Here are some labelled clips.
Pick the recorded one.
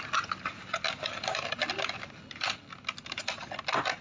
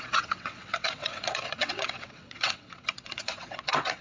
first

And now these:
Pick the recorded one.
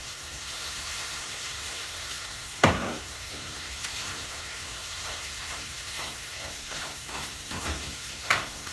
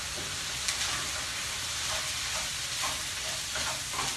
second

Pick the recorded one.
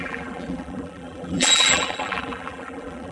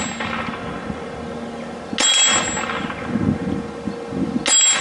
second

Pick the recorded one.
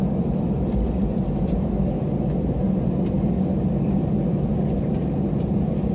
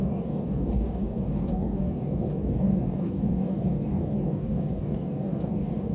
first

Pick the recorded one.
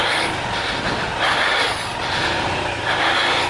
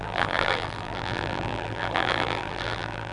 first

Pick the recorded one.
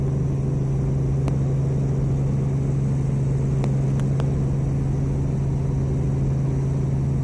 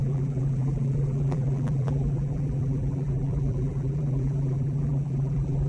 first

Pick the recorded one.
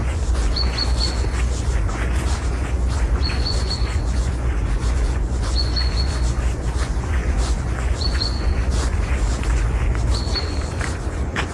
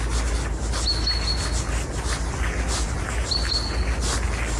second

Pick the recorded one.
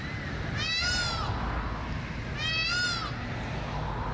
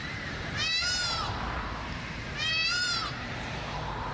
first